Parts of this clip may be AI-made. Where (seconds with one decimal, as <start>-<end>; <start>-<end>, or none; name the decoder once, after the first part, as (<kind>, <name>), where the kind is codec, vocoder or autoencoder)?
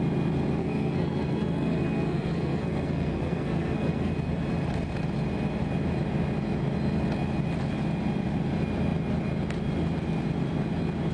0.6-4.1 (codec, SNAC)